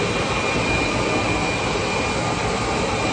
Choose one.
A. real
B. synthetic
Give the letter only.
A